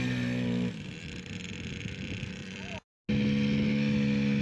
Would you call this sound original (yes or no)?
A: yes